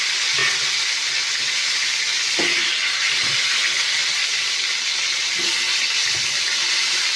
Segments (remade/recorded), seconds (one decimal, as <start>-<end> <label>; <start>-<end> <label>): 0.0-7.2 recorded